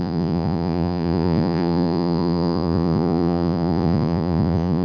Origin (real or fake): fake